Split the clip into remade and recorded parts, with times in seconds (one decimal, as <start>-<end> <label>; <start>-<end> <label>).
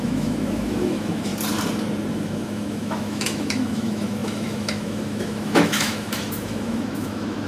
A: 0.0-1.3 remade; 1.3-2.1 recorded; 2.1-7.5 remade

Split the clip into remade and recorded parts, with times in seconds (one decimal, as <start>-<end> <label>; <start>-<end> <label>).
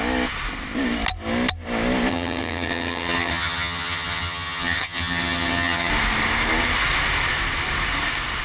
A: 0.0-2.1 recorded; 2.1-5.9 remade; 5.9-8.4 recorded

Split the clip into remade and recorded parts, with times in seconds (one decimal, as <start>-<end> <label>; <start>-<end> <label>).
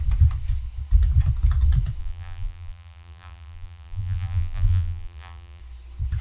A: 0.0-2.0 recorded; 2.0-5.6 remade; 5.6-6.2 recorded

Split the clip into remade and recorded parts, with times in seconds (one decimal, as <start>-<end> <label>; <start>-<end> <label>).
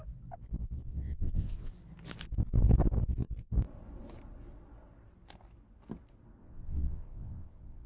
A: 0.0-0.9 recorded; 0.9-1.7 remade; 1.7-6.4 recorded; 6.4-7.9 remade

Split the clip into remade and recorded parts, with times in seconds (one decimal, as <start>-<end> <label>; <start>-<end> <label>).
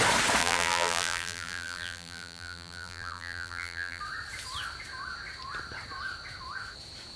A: 0.0-0.4 recorded; 0.4-4.0 remade; 4.0-7.2 recorded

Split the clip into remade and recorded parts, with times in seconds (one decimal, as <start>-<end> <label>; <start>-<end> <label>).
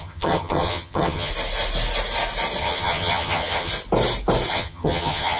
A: 0.0-1.3 remade; 1.3-2.6 recorded; 2.6-3.7 remade; 3.7-4.5 recorded; 4.5-5.4 remade